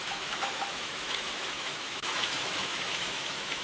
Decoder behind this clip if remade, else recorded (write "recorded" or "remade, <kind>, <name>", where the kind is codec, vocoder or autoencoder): remade, autoencoder, DAC-VAE